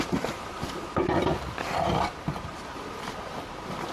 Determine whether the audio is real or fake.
fake